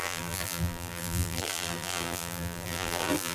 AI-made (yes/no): yes